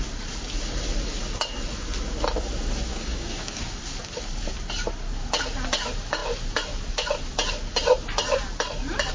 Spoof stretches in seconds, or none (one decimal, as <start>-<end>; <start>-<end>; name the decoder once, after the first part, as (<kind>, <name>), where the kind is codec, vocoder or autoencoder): 2.9-3.8 (codec, DAC)